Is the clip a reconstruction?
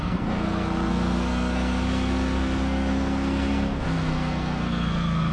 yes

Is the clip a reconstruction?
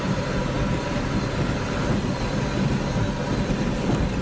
no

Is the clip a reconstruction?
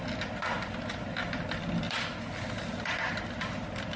no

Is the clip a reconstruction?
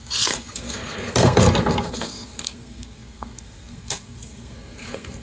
yes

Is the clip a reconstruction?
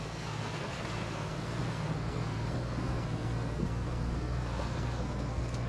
yes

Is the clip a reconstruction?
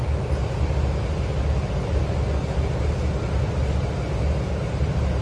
no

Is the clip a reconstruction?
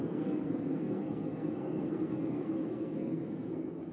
yes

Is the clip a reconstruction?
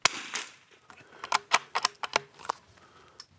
no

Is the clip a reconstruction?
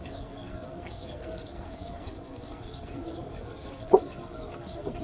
yes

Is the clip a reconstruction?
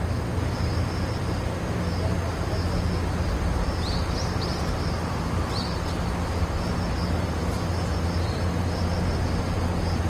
no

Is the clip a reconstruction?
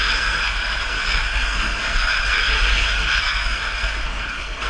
yes